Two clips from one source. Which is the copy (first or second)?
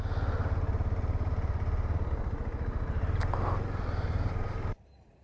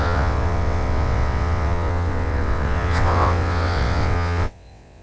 second